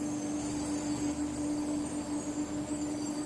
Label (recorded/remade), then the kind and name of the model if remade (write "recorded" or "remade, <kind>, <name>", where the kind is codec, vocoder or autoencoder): recorded